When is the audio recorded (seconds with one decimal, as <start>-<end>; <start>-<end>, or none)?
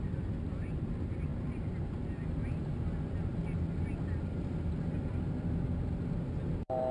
1.3-4.7